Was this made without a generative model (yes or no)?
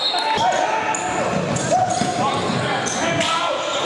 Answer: yes